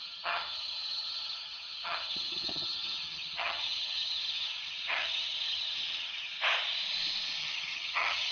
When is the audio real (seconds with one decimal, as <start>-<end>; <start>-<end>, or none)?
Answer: 6.3-7.4